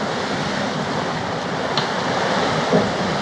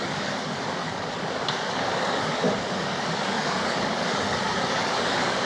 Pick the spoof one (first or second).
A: second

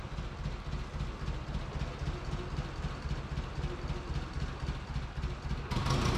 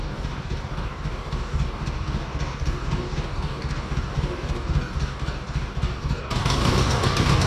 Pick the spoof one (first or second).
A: second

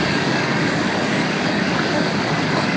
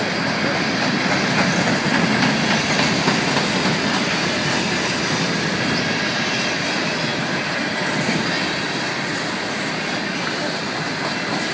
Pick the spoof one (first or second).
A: first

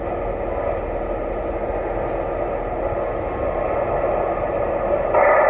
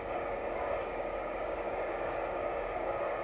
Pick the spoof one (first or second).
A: second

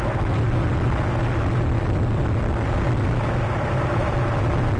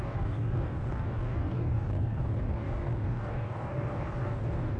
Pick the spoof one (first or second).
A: second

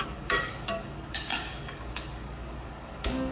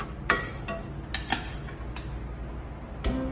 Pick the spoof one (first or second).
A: first